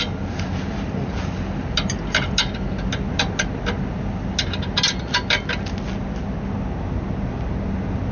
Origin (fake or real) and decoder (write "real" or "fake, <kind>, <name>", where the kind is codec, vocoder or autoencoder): real